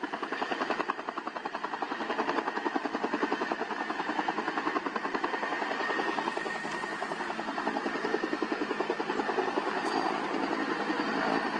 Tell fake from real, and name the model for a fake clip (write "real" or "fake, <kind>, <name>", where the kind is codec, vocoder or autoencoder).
real